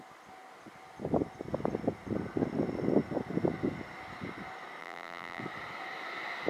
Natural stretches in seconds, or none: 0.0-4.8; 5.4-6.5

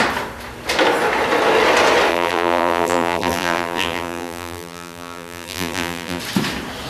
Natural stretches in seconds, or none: 0.0-2.1; 6.2-6.9

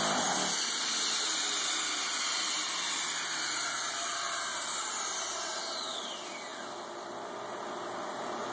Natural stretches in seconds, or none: 0.0-4.5; 5.2-8.5

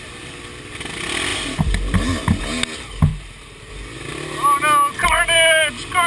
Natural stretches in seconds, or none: 0.0-3.1; 3.7-6.1

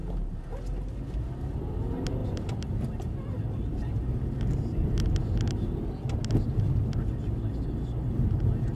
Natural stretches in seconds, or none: 0.0-8.8

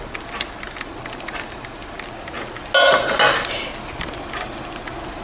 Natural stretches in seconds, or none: 1.8-5.2